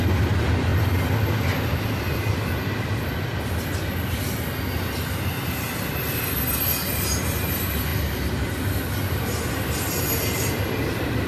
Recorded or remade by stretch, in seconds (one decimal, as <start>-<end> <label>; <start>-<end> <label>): 0.0-11.3 recorded